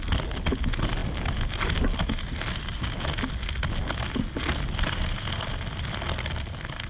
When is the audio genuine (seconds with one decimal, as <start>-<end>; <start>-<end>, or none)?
0.0-6.9